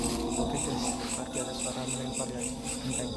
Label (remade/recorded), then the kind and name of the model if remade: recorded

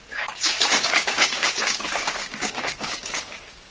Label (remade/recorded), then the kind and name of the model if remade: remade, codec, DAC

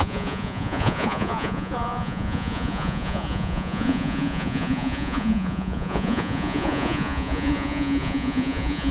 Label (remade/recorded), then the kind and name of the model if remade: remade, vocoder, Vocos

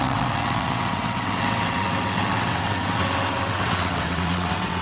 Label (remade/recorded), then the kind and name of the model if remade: remade, vocoder, WaveNeXt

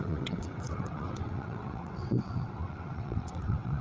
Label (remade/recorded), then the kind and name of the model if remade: remade, vocoder, WaveNeXt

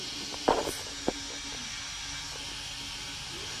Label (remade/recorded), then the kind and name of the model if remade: recorded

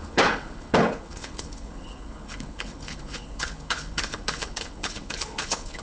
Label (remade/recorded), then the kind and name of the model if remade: remade, codec, HILCodec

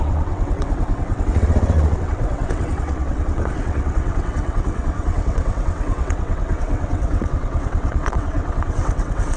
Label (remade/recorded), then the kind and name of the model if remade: remade, vocoder, WaveNeXt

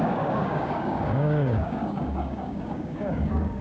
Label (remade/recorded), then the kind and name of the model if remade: remade, codec, DAC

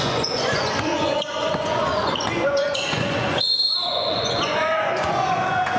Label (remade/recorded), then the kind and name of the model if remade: remade, vocoder, Vocos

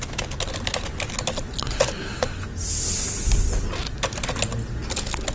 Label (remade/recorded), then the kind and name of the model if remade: recorded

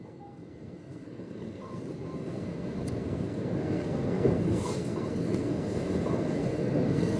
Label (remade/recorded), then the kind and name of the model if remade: remade, codec, SNAC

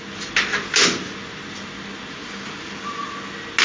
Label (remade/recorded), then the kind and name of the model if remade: recorded